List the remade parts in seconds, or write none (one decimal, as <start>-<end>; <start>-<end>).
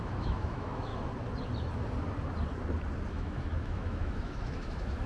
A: 0.0-0.9; 3.1-5.1